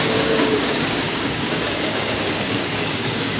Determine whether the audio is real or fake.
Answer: fake